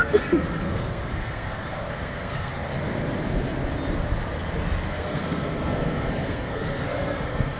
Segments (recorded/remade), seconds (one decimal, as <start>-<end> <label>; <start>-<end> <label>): 0.0-2.5 remade; 2.5-4.9 recorded; 4.9-7.6 remade